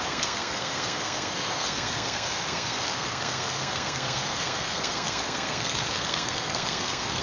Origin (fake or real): fake